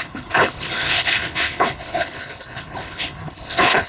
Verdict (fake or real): fake